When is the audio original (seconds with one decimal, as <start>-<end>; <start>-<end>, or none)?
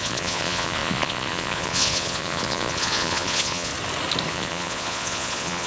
3.7-4.3